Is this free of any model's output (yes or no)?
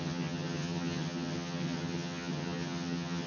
no